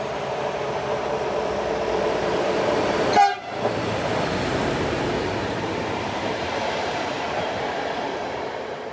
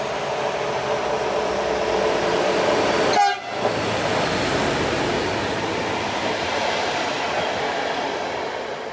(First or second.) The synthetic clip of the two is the first